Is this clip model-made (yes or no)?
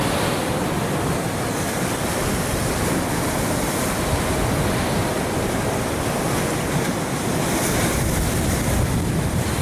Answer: no